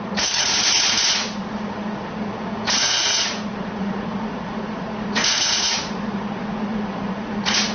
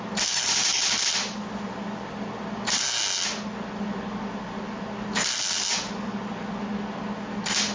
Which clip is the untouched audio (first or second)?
second